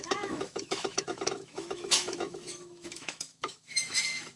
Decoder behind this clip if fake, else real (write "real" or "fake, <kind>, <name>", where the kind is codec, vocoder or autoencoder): fake, autoencoder, DAC-VAE